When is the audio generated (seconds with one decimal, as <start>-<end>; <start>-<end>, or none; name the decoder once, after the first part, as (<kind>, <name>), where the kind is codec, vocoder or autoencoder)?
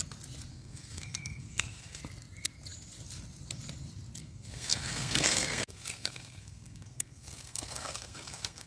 0.5-2.0 (codec, SNAC); 4.2-8.7